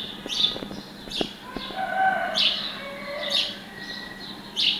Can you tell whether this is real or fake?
real